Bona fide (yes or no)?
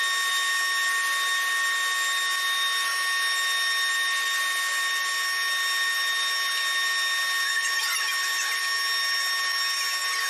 yes